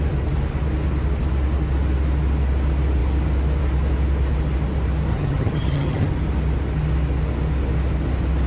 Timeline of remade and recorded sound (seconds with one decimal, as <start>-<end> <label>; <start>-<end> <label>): 0.0-5.1 recorded; 5.1-6.1 remade; 6.1-8.5 recorded